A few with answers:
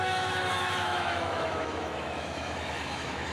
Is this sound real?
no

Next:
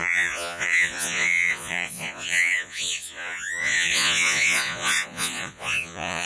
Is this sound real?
no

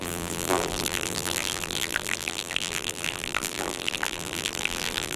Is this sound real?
no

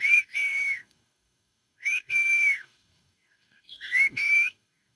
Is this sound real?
no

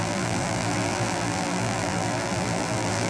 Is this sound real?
no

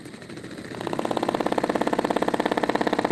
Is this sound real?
yes